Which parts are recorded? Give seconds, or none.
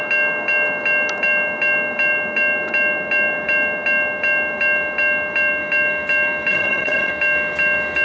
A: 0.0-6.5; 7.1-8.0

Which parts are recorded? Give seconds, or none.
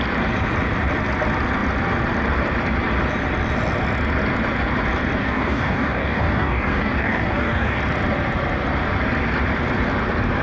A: 0.0-5.2; 7.8-10.4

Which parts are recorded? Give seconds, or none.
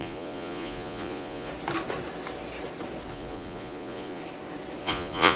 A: 1.5-3.1; 4.2-4.8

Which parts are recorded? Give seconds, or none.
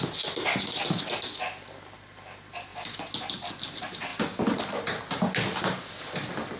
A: 0.0-6.6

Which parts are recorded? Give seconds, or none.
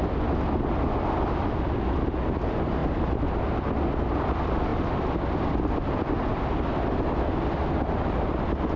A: 0.0-8.8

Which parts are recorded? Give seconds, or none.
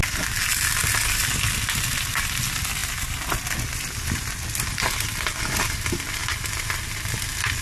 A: 0.0-7.6